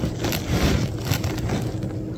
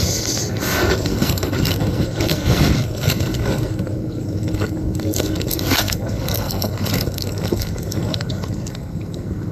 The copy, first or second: second